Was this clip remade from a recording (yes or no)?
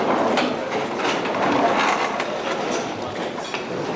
no